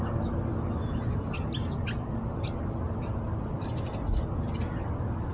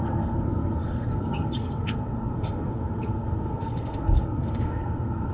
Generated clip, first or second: second